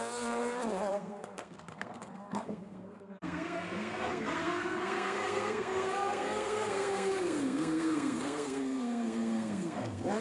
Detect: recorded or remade remade